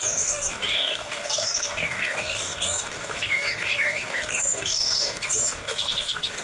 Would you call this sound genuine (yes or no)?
no